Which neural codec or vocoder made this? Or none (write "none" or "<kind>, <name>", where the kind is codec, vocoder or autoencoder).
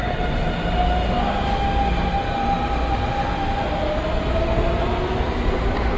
none